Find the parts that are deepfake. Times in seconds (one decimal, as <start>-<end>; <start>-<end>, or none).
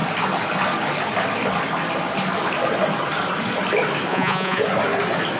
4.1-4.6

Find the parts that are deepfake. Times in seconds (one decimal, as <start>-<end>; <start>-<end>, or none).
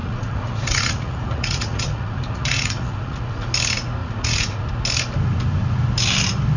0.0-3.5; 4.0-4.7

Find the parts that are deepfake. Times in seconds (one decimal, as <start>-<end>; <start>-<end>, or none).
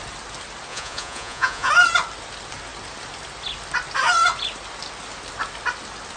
0.7-1.7